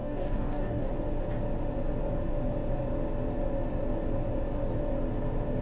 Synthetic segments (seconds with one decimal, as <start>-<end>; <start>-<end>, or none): 0.0-0.9

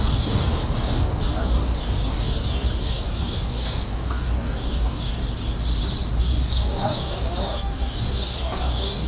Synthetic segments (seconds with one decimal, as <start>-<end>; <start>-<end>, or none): 0.0-5.2; 6.2-9.1

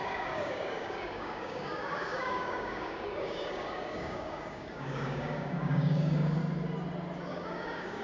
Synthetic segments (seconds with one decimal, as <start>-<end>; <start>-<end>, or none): 0.0-6.4; 7.3-8.0

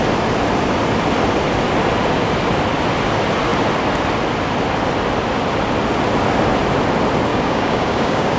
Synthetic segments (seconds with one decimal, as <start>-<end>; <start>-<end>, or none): 7.3-8.4

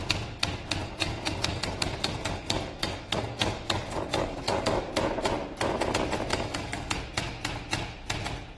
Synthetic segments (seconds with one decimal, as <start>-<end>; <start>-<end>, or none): 0.8-4.9; 6.3-7.0

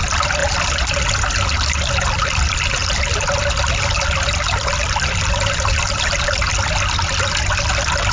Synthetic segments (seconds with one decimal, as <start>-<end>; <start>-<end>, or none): none